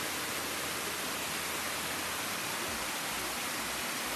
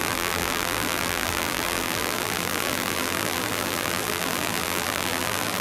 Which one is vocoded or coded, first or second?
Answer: second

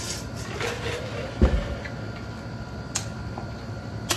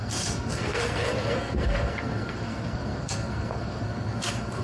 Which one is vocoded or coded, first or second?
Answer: second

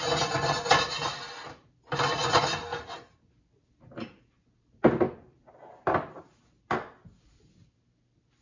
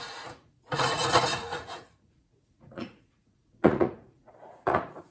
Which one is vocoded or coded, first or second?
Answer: second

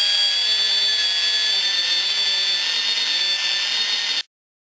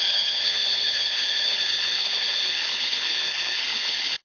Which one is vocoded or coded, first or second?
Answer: second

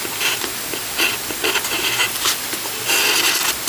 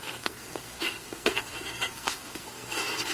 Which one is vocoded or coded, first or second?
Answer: second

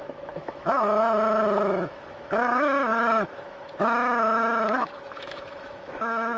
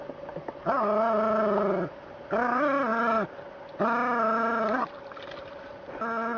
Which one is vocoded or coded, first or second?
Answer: first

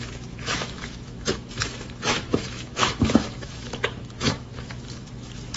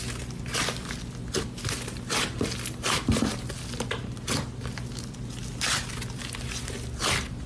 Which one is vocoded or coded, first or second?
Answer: first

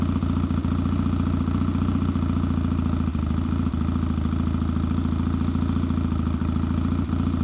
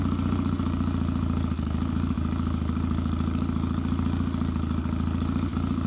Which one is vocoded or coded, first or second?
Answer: second